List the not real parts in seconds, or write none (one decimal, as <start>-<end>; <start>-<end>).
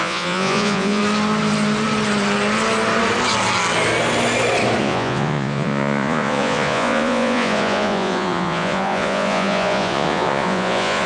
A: 0.0-1.0; 4.8-11.1